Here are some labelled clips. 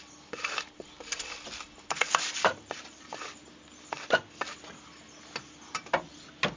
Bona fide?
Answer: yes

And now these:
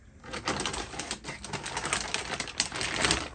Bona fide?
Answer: yes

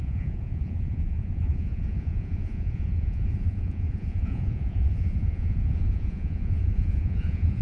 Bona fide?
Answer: no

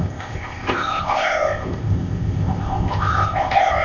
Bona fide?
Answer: no